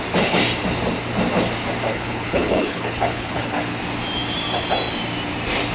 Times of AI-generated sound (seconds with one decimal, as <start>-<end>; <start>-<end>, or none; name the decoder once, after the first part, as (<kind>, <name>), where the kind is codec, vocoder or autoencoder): 1.9-3.8 (codec, HILCodec)